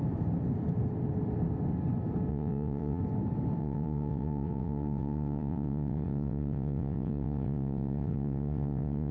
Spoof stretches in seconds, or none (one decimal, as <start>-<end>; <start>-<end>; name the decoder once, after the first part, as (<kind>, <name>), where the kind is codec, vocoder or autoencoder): 2.3-3.0 (vocoder, WaveNeXt); 3.6-9.1